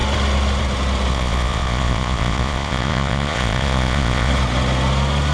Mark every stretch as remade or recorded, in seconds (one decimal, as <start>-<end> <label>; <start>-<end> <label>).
0.0-1.1 recorded; 1.1-4.3 remade; 4.3-5.3 recorded